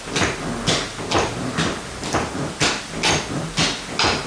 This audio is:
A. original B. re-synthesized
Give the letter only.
A